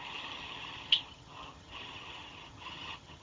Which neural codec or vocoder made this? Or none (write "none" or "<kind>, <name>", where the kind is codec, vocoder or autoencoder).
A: vocoder, HiFi-GAN